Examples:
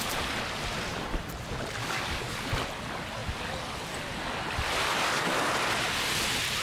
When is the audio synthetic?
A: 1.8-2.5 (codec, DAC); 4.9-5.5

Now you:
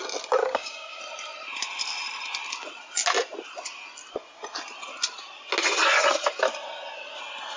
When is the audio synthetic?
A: 0.4-1.0 (codec, DAC)